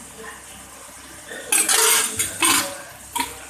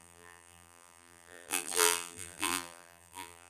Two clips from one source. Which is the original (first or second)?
first